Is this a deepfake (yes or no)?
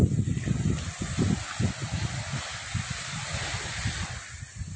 no